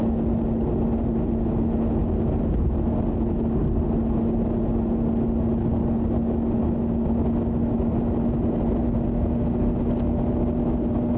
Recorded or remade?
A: recorded